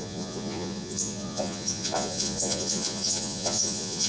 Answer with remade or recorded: remade